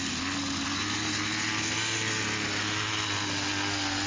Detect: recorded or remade recorded